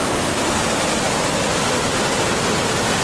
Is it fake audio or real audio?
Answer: real